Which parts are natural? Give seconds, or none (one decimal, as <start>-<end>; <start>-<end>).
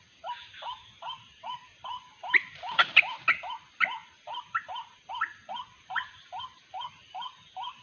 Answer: 0.0-0.4; 3.0-4.0; 5.1-7.8